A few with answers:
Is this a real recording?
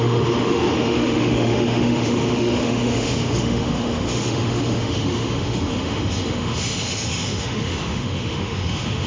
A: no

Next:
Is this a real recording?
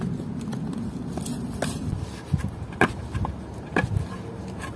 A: yes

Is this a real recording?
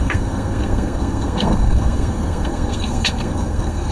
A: no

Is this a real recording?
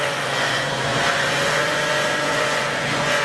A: no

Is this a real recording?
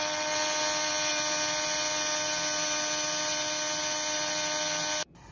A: yes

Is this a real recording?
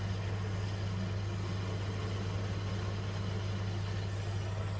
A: yes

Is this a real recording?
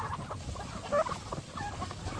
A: yes